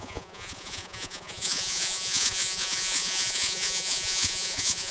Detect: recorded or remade remade